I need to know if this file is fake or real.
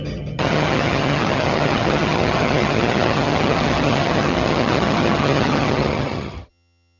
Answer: fake